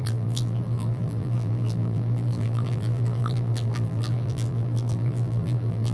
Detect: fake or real fake